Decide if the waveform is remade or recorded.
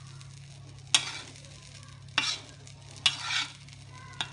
recorded